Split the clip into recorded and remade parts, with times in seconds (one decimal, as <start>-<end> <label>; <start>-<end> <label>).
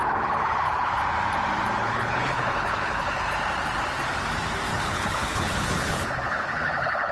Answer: 0.0-1.0 remade; 1.0-1.8 recorded; 1.8-3.3 remade; 3.3-4.7 recorded; 4.7-7.1 remade